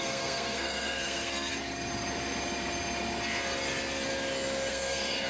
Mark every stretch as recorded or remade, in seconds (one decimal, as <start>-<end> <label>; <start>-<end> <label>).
0.0-1.5 remade; 1.5-4.7 recorded; 4.7-5.3 remade